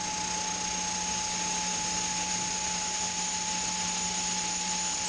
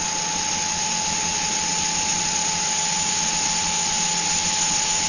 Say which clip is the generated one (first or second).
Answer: second